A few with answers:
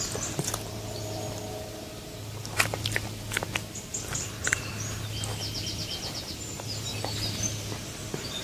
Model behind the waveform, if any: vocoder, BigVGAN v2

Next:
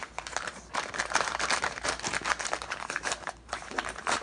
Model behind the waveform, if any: vocoder, BigVGAN v2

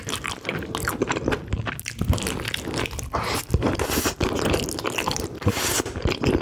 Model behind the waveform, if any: none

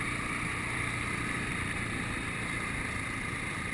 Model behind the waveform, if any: vocoder, BigVGAN v2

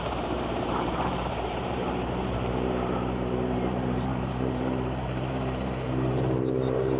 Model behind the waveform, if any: vocoder, BigVGAN v2